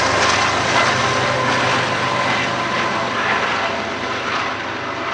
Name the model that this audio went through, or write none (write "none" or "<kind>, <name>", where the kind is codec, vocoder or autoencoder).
none